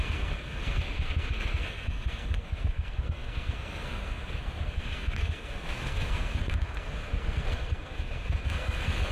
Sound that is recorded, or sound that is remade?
remade